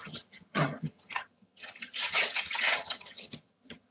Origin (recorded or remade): remade